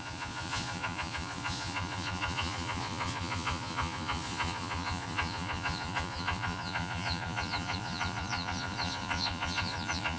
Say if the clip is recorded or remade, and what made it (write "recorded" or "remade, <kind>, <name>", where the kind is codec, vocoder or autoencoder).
remade, vocoder, Vocos